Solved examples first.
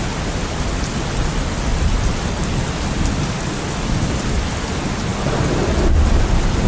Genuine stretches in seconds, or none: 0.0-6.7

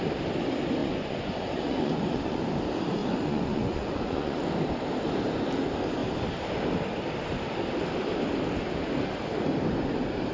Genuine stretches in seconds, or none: 0.0-0.8; 2.4-3.0; 4.4-10.3

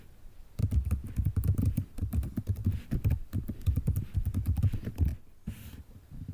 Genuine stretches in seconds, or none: 0.6-1.6; 5.1-5.8

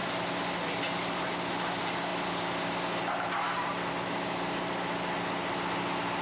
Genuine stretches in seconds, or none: 0.0-6.2

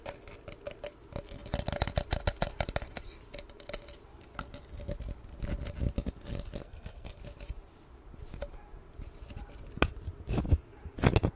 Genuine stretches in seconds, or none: 0.0-6.6; 7.2-11.4

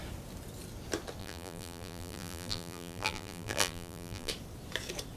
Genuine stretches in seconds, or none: 0.0-1.2; 4.3-5.2

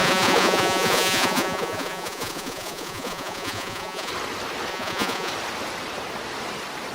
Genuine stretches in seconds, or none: 4.1-4.7; 5.3-6.9

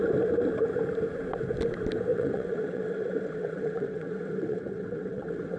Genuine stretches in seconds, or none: 0.0-2.1